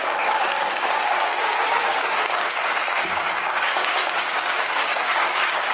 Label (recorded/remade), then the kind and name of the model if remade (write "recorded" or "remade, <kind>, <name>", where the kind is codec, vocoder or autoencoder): remade, codec, DAC